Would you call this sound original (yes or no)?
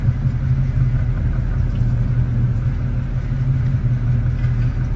yes